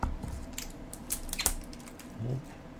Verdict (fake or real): fake